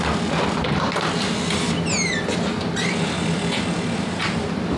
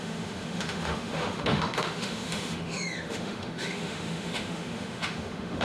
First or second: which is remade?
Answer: second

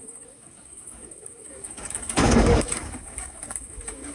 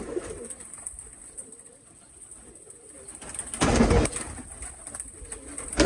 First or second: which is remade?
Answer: first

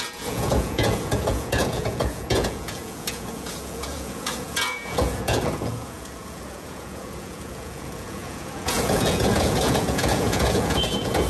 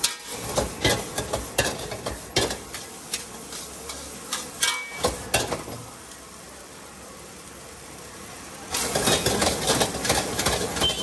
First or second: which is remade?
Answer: first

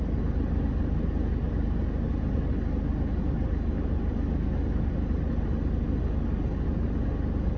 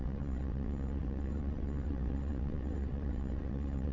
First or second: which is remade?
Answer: second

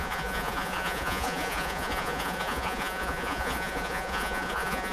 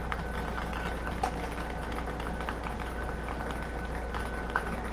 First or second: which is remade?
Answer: first